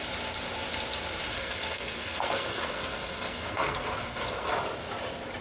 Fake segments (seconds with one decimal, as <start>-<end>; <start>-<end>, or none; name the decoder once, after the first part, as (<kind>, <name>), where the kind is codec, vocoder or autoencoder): 1.3-4.5 (codec, SNAC)